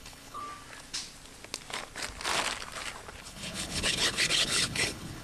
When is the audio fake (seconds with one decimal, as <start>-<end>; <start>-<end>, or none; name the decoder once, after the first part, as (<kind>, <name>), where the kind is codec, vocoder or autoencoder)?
0.0-0.4 (codec, HILCodec); 3.2-5.2